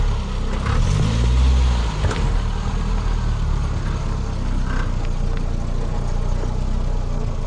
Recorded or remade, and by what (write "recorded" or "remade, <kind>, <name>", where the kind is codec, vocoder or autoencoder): recorded